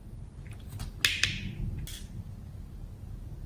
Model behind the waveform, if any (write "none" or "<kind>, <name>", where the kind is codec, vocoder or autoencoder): none